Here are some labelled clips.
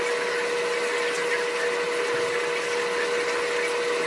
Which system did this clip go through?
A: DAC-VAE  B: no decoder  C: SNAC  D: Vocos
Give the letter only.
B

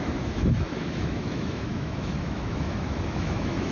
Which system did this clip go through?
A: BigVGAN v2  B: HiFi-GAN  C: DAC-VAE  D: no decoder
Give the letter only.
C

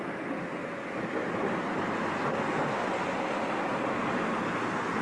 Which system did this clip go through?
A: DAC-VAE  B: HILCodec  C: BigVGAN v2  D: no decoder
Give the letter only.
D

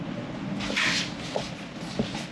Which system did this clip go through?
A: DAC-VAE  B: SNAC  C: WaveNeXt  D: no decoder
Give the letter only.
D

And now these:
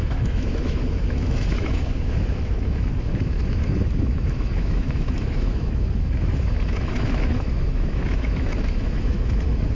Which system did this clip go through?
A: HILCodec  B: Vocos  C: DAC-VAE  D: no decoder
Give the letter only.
C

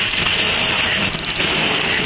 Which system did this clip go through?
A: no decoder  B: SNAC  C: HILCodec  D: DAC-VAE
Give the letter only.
A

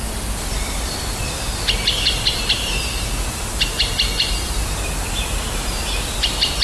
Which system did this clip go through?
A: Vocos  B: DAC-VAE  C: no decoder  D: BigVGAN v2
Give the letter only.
C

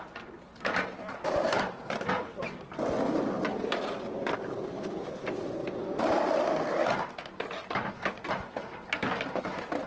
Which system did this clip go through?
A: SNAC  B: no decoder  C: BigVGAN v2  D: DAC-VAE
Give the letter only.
B